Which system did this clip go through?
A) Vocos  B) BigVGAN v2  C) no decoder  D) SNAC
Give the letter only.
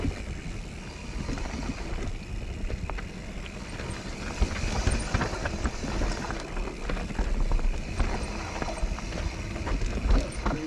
C